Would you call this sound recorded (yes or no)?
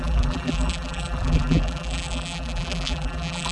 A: no